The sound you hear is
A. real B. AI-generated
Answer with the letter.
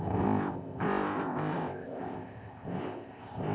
B